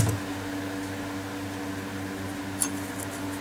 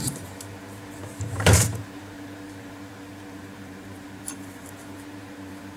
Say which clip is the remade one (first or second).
second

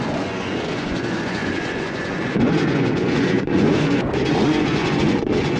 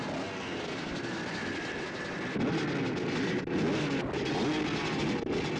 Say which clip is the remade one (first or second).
first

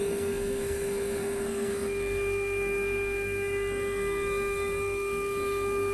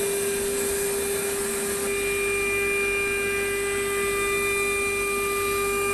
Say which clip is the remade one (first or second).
first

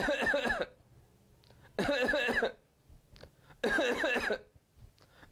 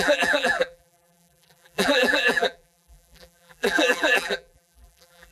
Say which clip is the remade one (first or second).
second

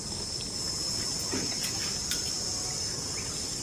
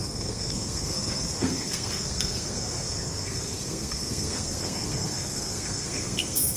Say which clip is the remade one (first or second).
second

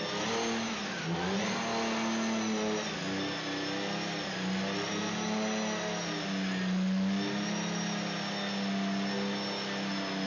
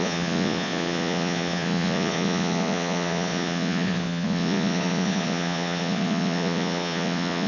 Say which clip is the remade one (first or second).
second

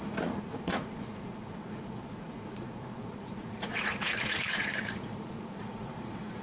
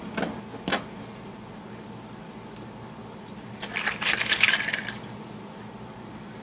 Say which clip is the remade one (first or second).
first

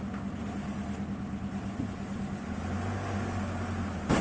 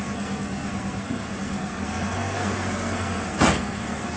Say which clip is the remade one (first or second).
second